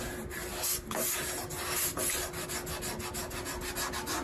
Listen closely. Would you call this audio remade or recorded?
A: recorded